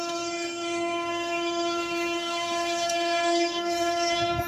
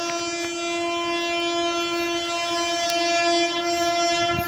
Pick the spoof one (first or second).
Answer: first